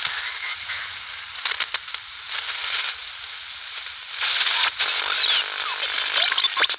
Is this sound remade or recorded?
recorded